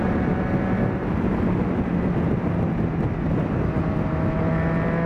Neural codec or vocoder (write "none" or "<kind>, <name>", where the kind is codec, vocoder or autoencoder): none